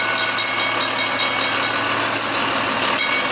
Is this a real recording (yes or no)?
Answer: yes